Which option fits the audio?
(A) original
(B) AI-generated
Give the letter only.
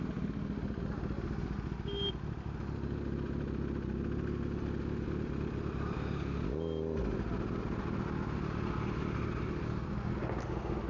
A